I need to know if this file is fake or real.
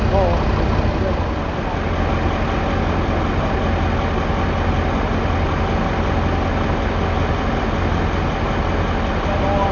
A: real